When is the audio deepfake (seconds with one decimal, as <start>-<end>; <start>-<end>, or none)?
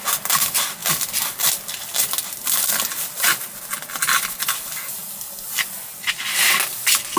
none